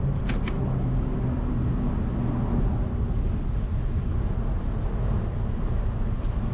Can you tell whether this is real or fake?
real